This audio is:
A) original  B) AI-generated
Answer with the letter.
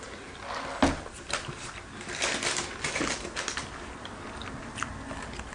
A